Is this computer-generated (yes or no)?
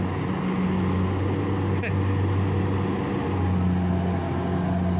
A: no